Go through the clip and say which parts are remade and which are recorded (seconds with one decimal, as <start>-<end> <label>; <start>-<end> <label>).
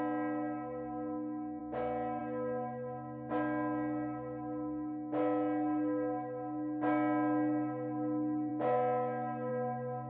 0.0-10.1 recorded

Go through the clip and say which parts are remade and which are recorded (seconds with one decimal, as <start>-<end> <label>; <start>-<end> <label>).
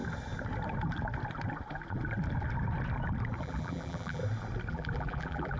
0.0-3.4 recorded; 3.4-4.2 remade; 4.2-4.7 recorded; 4.7-5.6 remade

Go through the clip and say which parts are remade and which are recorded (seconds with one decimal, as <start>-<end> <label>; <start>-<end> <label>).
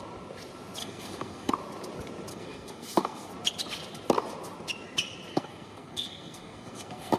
0.0-0.8 recorded; 0.8-1.5 remade; 1.5-2.3 recorded; 2.3-3.3 remade; 3.3-5.3 recorded; 5.3-7.2 remade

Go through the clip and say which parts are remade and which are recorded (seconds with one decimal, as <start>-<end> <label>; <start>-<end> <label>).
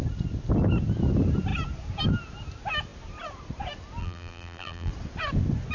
0.0-4.0 recorded; 4.0-4.9 remade; 4.9-5.7 recorded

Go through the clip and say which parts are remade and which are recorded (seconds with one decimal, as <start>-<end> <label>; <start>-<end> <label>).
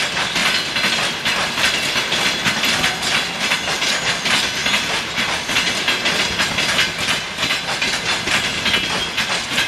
0.0-9.7 recorded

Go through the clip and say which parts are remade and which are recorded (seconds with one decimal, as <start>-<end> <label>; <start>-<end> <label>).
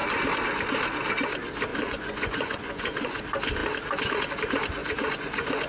0.0-1.7 recorded; 1.7-3.2 remade; 3.2-4.8 recorded; 4.8-5.7 remade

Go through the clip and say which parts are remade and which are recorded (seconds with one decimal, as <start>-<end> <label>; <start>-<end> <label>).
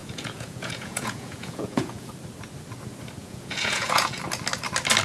0.0-2.1 remade; 2.1-3.2 recorded; 3.2-4.2 remade; 4.2-5.0 recorded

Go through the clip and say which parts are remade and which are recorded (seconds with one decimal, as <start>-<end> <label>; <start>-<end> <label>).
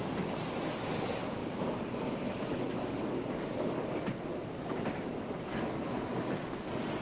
0.0-4.4 recorded; 4.4-5.8 remade; 5.8-7.0 recorded